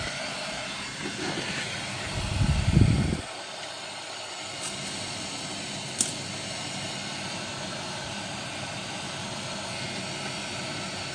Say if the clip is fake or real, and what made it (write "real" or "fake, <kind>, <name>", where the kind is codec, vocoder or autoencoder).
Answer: real